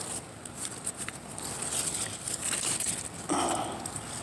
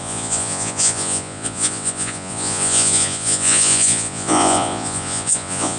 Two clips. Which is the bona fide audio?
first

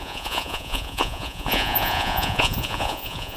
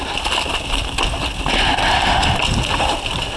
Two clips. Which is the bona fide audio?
second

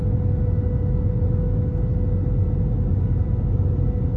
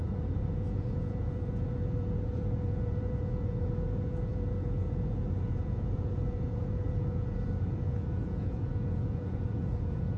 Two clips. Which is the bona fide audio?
first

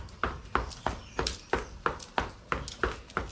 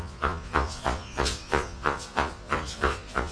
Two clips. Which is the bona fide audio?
first